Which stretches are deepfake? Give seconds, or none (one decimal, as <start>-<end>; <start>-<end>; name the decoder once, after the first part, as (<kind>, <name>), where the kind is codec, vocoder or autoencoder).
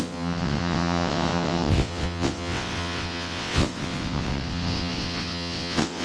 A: 0.0-6.0 (vocoder, WaveNeXt)